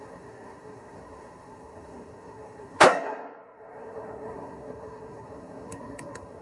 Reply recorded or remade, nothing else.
remade